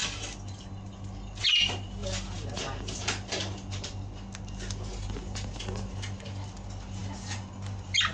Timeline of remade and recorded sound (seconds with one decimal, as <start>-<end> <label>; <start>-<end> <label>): 0.0-8.1 recorded